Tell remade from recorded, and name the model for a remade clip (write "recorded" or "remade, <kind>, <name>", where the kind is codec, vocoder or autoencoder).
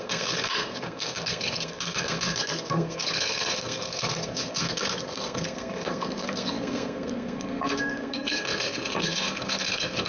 remade, codec, SNAC